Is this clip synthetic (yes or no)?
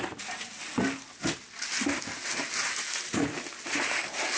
no